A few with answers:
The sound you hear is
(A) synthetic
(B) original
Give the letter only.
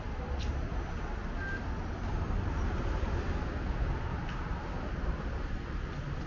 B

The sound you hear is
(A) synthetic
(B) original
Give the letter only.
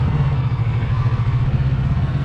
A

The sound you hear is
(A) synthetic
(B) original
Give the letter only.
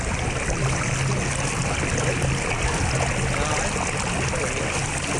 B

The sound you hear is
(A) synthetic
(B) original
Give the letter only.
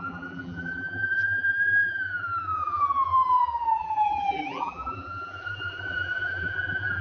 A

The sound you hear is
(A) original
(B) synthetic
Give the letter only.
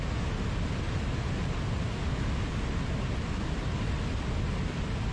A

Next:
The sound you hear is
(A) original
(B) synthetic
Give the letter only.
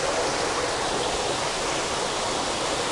A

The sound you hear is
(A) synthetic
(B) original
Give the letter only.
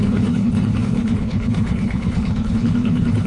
A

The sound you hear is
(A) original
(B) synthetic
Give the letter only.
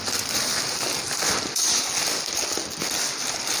A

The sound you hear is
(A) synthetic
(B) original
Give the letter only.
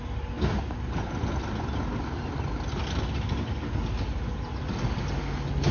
B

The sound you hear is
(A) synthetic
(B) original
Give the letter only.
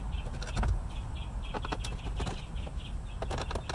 B